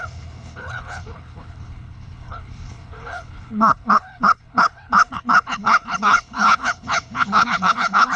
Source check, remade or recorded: remade